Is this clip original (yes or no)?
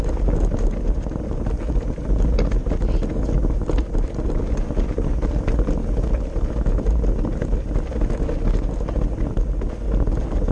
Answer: yes